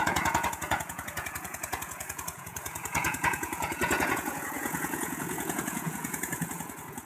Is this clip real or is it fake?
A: fake